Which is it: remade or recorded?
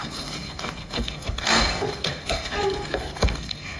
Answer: remade